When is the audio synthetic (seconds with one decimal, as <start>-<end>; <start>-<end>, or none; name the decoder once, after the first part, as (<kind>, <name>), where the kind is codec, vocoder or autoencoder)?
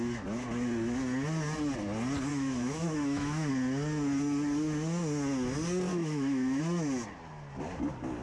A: 2.3-3.5 (autoencoder, DAC-VAE); 5.9-6.6